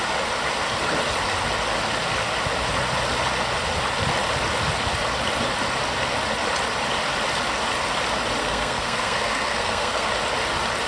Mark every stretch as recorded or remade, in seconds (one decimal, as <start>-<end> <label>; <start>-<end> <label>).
0.0-8.4 recorded; 8.4-10.1 remade; 10.1-10.9 recorded